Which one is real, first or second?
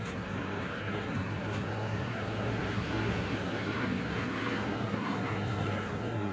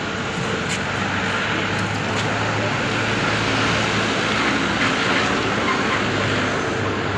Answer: second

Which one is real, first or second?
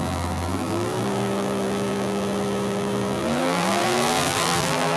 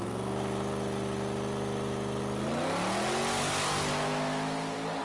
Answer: second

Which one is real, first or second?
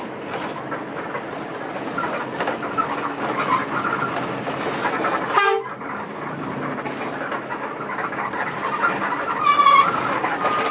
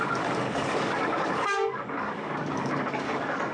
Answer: first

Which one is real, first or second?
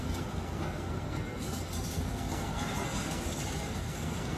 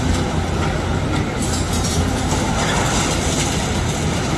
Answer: second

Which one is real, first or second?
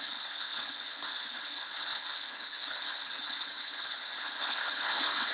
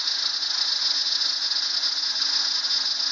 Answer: second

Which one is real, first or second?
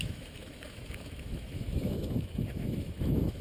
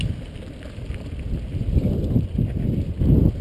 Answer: second